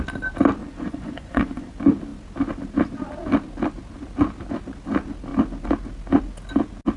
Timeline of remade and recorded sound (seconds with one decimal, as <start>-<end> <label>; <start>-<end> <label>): 0.0-0.6 recorded; 0.6-1.7 remade; 1.7-7.0 recorded

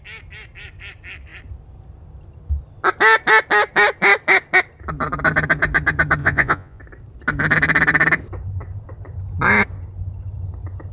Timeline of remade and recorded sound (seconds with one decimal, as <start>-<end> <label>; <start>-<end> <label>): 0.0-6.2 recorded; 6.2-6.8 remade; 6.8-10.9 recorded

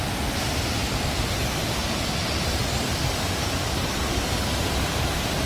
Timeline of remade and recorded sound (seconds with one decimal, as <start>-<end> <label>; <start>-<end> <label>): 0.0-5.5 recorded